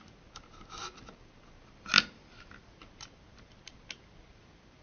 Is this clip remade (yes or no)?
no